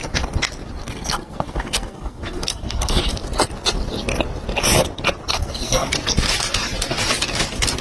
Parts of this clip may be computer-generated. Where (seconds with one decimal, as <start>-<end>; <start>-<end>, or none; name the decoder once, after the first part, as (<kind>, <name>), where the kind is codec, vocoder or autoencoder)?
0.8-3.0 (codec, SNAC); 5.3-5.9